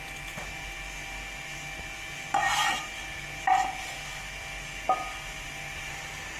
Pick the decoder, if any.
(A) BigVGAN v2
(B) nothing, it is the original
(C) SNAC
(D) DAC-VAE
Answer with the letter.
B